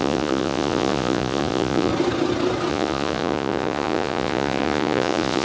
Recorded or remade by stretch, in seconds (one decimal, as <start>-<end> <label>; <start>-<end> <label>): 0.0-1.9 remade; 1.9-2.7 recorded; 2.7-5.4 remade